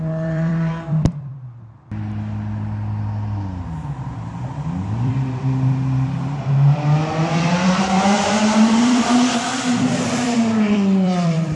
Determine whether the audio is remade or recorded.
remade